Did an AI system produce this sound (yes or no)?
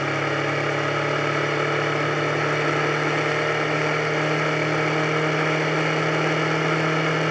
no